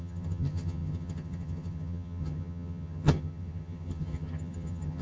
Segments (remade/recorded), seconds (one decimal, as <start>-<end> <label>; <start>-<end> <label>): 0.0-5.0 remade